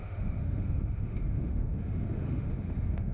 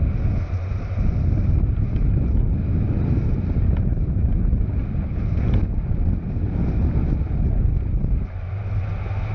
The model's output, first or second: first